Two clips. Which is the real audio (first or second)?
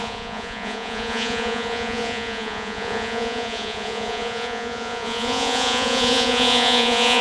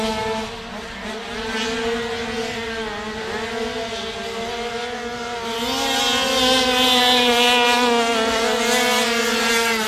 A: second